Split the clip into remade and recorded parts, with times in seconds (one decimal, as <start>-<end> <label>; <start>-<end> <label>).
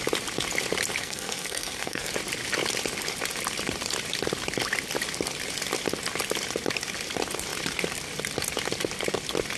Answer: 0.0-1.0 recorded; 1.0-2.1 remade; 2.1-9.6 recorded